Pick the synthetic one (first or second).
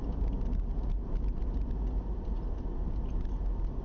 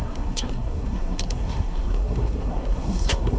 second